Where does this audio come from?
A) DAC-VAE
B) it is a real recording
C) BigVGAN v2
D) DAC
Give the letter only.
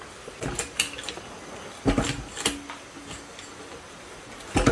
B